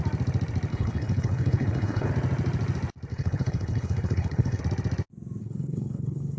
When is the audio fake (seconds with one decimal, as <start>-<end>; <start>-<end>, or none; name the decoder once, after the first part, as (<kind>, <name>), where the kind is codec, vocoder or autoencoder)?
0.7-2.1 (codec, HILCodec); 3.1-4.6; 5.4-6.4